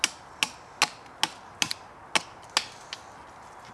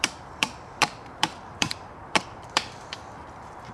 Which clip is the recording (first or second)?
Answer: first